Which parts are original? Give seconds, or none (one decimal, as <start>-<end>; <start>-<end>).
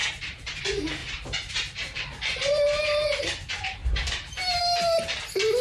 0.6-1.0; 3.2-3.8; 4.6-5.6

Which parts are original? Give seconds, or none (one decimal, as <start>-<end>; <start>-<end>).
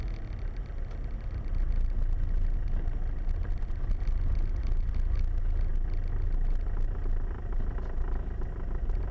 0.0-9.1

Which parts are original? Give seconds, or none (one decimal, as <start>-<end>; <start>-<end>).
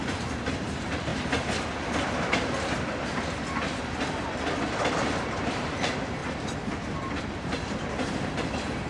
1.1-5.5; 6.2-7.2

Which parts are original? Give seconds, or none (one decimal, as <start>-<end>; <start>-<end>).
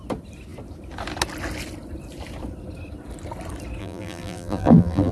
0.0-3.8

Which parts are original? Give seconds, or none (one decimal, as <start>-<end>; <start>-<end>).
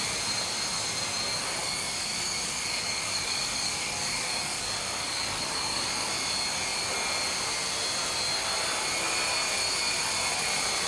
0.0-1.6; 6.1-10.9